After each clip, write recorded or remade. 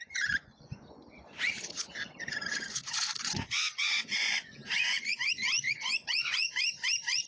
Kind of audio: remade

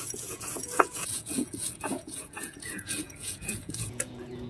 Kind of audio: remade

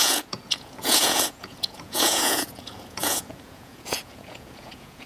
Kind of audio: remade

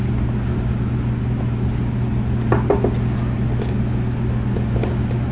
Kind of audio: recorded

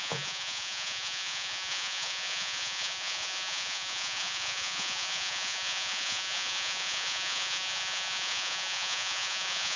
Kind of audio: remade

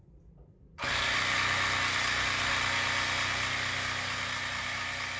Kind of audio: recorded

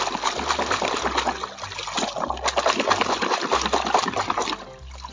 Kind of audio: recorded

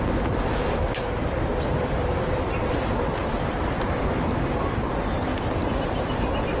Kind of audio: recorded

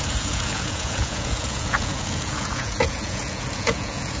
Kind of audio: remade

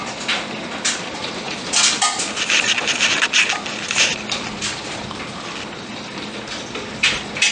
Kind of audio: recorded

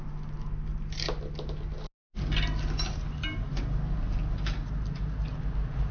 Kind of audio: recorded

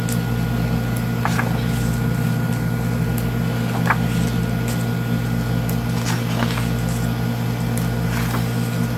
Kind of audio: recorded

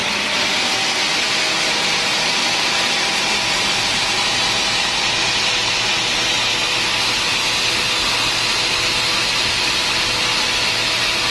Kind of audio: recorded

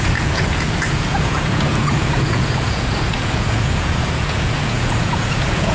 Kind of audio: remade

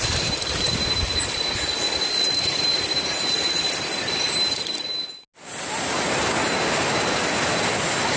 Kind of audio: recorded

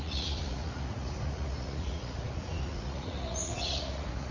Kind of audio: remade